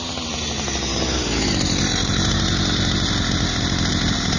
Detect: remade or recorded remade